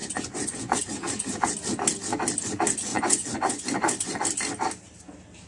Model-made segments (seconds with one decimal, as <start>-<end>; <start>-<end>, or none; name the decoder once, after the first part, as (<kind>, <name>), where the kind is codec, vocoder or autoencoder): 0.0-0.8 (vocoder, Vocos); 2.9-4.2